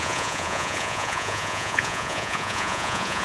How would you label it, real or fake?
fake